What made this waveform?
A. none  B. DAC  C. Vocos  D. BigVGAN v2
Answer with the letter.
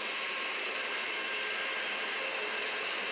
A